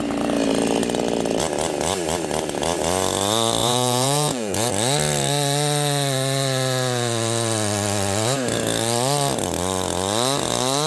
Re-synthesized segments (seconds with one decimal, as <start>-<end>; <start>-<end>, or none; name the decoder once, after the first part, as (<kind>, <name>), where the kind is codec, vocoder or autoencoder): 3.6-4.7 (vocoder, Vocos)